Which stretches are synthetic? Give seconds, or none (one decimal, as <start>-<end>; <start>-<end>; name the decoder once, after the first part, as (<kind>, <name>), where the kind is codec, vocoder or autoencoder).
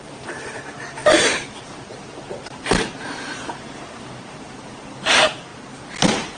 0.0-5.5 (vocoder, BigVGAN v2)